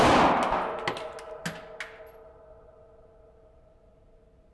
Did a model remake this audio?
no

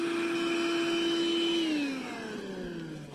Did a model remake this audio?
no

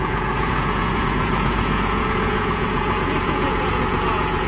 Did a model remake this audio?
yes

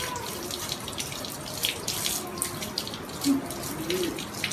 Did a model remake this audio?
no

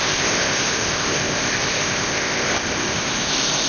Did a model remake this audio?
yes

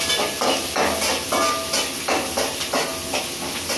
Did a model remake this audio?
no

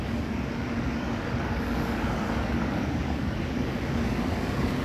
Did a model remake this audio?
yes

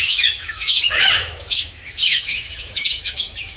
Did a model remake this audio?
yes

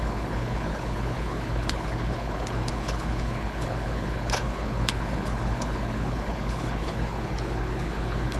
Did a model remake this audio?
yes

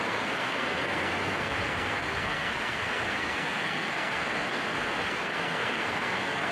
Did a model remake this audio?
yes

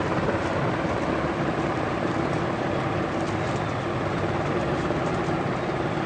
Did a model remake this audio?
no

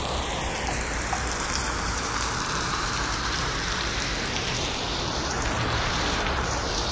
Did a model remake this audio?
yes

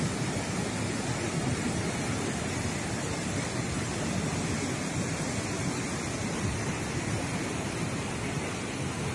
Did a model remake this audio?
no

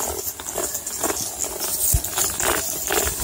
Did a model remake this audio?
no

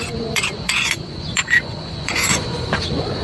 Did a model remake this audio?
yes